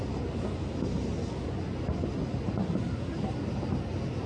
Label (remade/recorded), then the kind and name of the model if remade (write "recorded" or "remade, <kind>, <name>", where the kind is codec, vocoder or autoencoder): recorded